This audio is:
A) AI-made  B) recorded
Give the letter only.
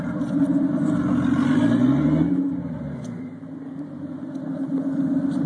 B